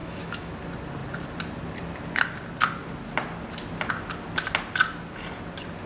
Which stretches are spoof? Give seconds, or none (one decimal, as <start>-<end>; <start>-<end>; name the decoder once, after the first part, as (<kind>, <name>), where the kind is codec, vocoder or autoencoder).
0.0-0.5 (autoencoder, DAC-VAE)